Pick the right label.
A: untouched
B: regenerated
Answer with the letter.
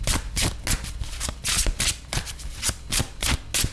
A